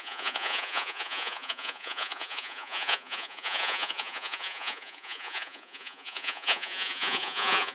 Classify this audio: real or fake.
fake